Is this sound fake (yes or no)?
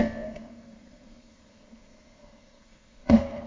yes